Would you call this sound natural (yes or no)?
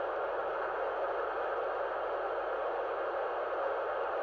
yes